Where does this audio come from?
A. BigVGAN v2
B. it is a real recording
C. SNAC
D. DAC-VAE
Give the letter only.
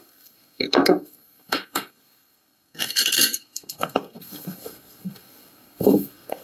C